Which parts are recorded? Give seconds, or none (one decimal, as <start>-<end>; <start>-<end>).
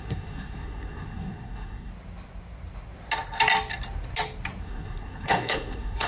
1.9-4.6